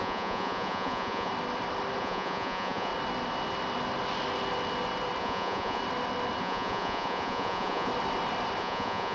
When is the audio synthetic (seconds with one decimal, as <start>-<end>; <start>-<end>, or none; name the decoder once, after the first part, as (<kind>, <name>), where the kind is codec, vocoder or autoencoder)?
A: 0.0-1.3 (vocoder, Vocos); 2.0-2.9; 5.2-5.8; 6.4-7.9; 8.6-9.1